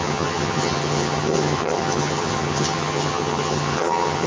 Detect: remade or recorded remade